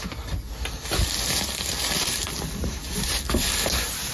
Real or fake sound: real